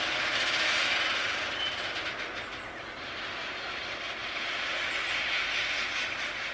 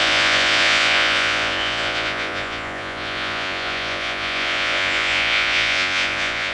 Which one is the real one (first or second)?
first